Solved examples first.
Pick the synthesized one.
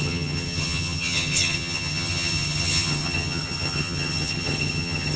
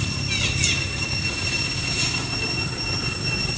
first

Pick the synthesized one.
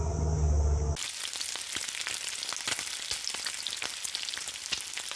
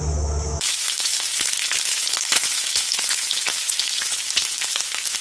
second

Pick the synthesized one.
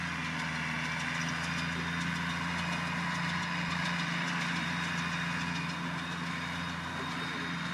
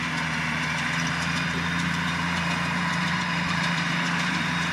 second